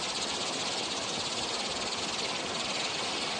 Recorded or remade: recorded